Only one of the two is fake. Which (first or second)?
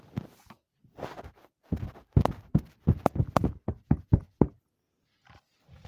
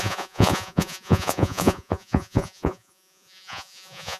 second